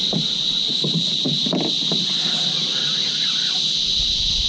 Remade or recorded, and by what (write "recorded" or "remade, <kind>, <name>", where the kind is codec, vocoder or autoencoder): recorded